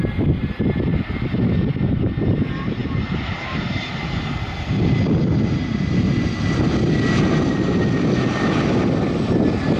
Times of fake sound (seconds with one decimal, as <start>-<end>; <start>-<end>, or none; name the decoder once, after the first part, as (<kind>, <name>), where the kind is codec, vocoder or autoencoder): none